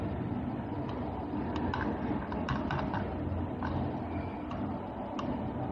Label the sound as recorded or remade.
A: recorded